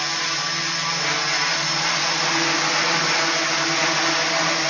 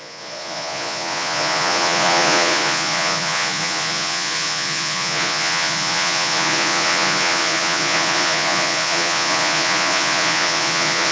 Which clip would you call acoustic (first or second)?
first